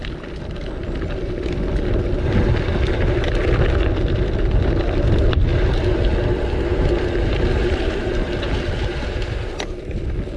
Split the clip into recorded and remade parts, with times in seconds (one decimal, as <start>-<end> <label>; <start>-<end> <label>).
0.0-10.4 recorded